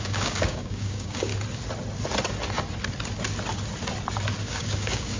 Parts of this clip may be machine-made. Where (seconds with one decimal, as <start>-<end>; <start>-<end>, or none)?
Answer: 0.0-1.3; 4.4-5.2